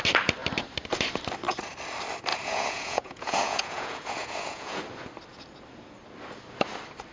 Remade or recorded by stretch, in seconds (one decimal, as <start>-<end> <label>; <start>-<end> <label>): 0.0-2.3 recorded; 2.3-4.8 remade; 4.8-7.1 recorded